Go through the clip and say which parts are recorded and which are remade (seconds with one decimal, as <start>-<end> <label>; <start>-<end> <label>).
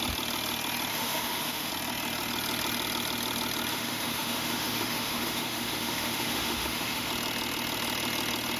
0.0-0.9 recorded; 0.9-1.7 remade; 1.7-3.7 recorded; 3.7-7.1 remade; 7.1-8.6 recorded